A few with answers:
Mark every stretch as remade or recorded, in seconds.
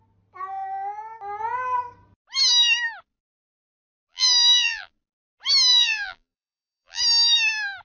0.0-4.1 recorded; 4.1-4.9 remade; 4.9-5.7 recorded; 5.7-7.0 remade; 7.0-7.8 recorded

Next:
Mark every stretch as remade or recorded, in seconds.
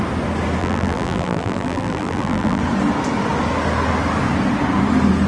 0.0-0.6 recorded; 0.6-2.6 remade; 2.6-5.3 recorded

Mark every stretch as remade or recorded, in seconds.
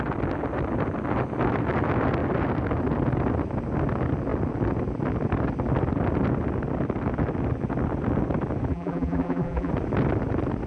0.0-8.7 recorded; 8.7-9.7 remade; 9.7-10.7 recorded